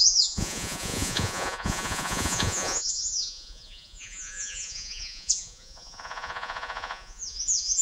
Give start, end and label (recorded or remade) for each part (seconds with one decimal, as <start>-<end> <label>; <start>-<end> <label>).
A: 0.0-7.8 remade